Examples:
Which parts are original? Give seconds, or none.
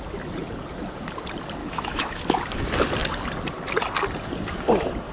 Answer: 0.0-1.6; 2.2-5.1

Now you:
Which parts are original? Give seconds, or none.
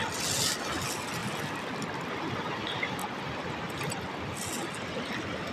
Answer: 0.0-5.5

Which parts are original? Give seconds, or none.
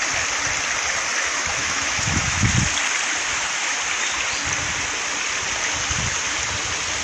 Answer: 0.0-1.2; 2.5-3.3; 3.8-7.0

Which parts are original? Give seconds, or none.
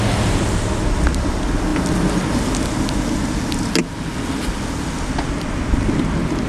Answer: 0.0-6.5